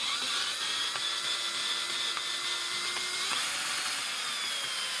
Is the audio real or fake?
real